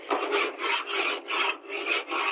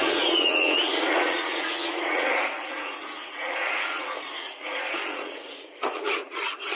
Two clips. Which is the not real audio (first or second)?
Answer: second